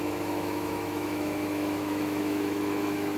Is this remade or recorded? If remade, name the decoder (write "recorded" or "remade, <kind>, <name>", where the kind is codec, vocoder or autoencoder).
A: remade, autoencoder, DAC-VAE